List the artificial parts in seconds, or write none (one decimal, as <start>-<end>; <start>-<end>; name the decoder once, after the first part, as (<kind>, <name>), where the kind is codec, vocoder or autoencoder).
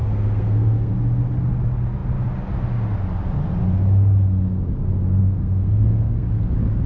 0.0-0.9 (codec, SNAC); 5.2-6.3